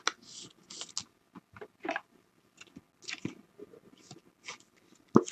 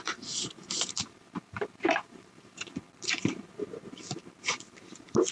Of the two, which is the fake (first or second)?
second